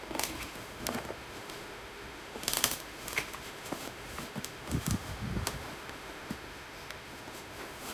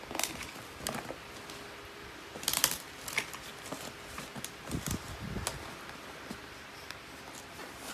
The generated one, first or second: first